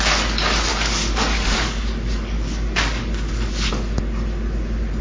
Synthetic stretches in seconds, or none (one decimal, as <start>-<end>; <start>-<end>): 0.7-3.7